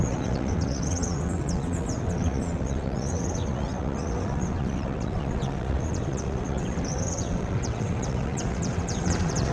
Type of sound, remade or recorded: remade